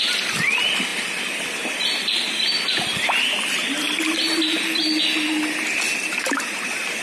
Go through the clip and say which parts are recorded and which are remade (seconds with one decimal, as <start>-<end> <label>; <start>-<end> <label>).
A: 0.0-7.0 recorded